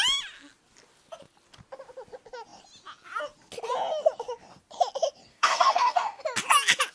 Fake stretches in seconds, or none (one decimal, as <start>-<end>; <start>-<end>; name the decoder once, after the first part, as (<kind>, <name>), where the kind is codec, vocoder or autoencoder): 5.3-6.2 (codec, DAC)